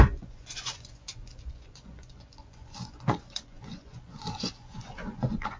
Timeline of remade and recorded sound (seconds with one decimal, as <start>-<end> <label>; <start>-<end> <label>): 0.0-5.6 remade

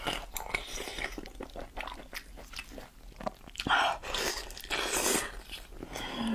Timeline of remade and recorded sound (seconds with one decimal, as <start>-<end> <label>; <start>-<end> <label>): 0.0-6.3 recorded

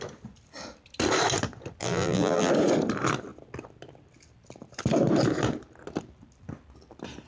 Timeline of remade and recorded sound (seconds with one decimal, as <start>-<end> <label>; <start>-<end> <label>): 0.0-1.8 recorded; 1.8-2.5 remade; 2.5-7.3 recorded

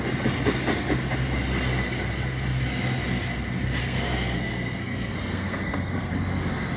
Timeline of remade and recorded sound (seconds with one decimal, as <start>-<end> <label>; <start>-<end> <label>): 0.0-3.8 recorded; 3.8-6.1 remade; 6.1-6.8 recorded

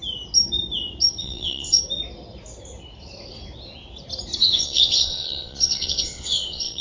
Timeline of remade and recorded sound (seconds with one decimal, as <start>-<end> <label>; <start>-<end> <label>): 0.0-1.2 recorded; 1.2-1.8 remade; 1.8-4.4 recorded; 4.4-6.8 remade

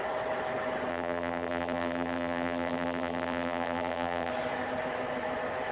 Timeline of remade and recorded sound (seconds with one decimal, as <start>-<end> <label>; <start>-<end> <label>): 0.0-0.9 recorded; 0.9-4.3 remade; 4.3-5.7 recorded